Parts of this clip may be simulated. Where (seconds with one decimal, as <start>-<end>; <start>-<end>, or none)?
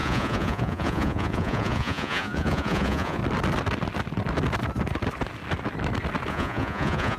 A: 0.0-3.2; 6.3-7.2